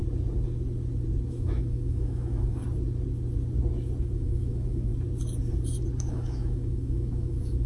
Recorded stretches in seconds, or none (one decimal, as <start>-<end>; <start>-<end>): 0.0-1.3; 2.6-4.0; 4.9-6.1